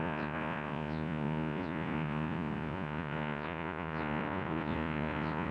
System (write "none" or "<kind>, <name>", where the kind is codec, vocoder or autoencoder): vocoder, Vocos